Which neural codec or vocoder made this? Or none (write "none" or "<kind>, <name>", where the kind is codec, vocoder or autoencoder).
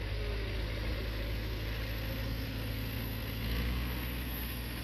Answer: none